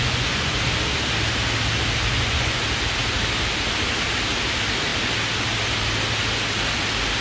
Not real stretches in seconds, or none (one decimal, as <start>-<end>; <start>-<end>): 0.0-0.6; 2.1-2.6